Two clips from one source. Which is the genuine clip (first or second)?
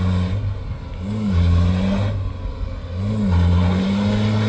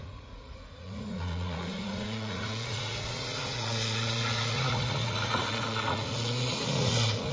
first